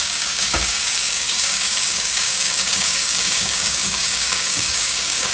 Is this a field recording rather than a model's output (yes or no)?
no